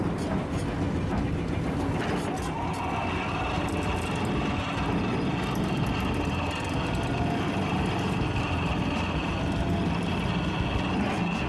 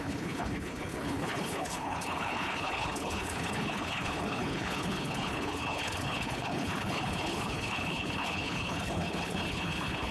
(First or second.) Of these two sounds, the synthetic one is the second